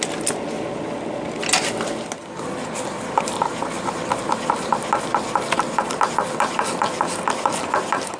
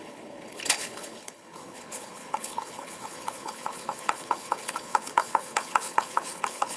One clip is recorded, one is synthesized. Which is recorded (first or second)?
first